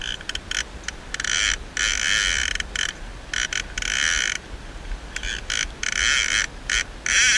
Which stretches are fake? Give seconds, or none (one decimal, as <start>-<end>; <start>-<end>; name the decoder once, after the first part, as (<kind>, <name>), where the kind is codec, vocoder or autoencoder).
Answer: none